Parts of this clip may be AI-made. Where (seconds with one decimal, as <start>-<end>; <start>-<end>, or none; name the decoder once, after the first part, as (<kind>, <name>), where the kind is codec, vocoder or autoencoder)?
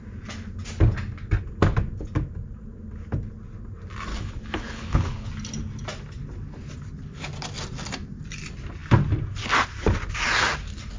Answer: 4.1-5.3 (codec, HILCodec)